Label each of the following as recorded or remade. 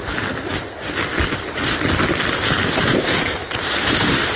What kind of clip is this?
recorded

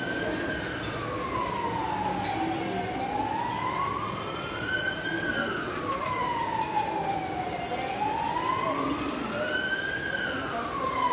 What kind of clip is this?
recorded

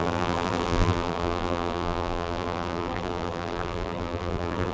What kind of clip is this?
remade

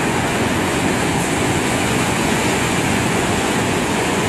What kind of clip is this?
remade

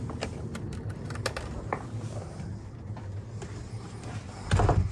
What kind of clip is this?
recorded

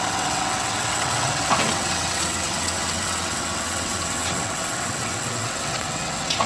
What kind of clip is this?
remade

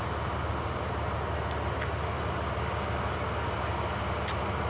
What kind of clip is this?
recorded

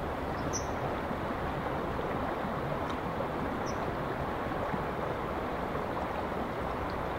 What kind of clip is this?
recorded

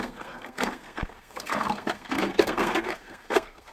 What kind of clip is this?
remade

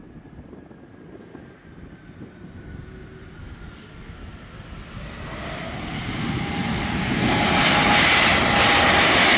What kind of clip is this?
recorded